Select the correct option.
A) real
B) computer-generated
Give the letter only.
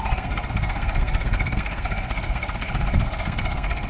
B